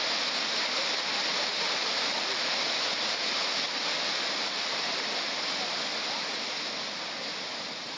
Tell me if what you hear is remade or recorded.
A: recorded